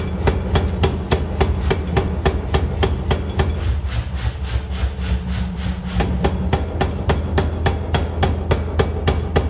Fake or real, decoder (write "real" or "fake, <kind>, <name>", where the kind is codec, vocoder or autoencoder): real